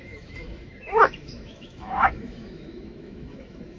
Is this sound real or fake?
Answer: fake